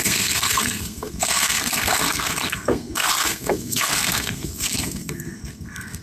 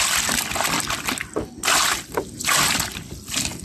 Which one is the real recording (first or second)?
second